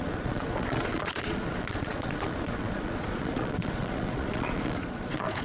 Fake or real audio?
fake